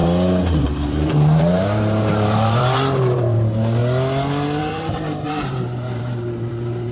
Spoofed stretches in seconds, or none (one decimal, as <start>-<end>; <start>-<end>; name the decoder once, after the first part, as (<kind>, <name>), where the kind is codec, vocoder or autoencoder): 0.6-3.8 (vocoder, BigVGAN v2); 4.6-6.9